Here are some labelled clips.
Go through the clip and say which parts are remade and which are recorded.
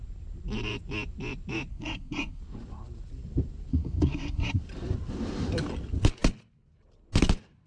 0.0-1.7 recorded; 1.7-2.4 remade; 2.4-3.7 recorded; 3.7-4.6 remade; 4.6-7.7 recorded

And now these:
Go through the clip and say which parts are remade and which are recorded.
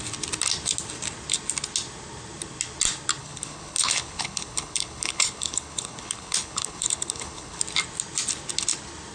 0.0-3.2 recorded; 3.2-7.6 remade; 7.6-9.1 recorded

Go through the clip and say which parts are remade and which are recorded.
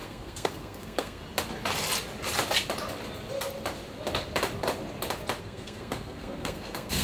0.0-1.2 remade; 1.2-5.4 recorded; 5.4-7.0 remade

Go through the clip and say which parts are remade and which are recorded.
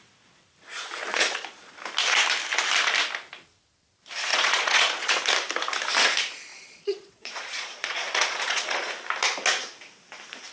0.0-1.1 recorded; 1.1-1.8 remade; 1.8-4.3 recorded; 4.3-5.2 remade; 5.2-6.5 recorded; 6.5-8.9 remade; 8.9-10.5 recorded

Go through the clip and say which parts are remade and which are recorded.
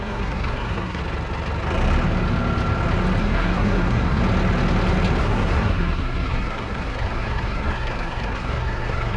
0.0-1.0 remade; 1.0-3.2 recorded; 3.2-4.2 remade; 4.2-5.2 recorded; 5.2-9.2 remade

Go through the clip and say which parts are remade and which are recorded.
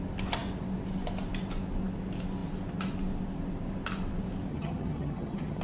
0.0-4.5 recorded; 4.5-5.6 remade